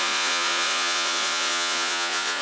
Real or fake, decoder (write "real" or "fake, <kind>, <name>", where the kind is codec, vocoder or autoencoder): fake, vocoder, Vocos